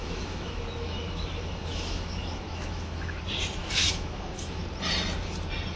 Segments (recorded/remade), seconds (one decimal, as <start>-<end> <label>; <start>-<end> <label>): 0.0-3.2 remade; 3.2-3.6 recorded; 3.6-4.6 remade; 4.6-5.8 recorded